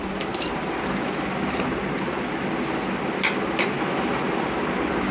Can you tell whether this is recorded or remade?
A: recorded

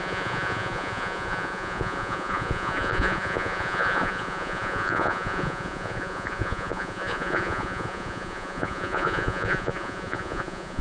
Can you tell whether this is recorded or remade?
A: remade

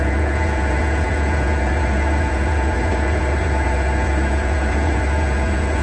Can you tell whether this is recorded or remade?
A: remade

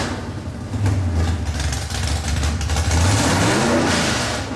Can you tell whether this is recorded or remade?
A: recorded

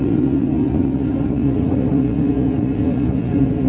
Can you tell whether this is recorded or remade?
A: remade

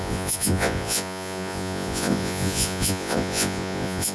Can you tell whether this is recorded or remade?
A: remade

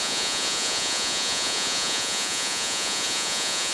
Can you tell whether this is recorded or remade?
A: remade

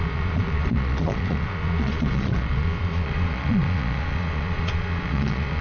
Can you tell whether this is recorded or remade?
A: remade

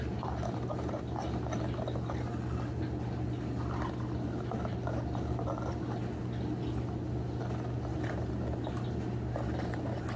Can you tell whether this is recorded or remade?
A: recorded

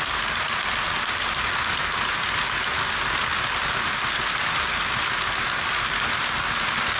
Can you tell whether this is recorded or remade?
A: recorded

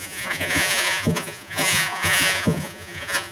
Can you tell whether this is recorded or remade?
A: remade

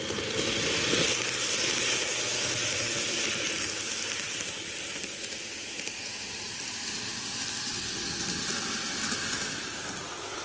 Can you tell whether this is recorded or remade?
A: recorded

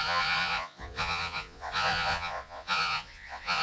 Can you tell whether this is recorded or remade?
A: remade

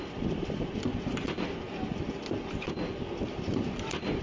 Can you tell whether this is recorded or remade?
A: recorded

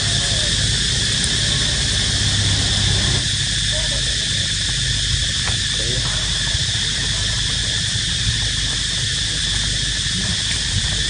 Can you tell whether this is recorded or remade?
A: recorded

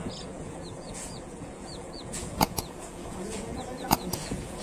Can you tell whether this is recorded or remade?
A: remade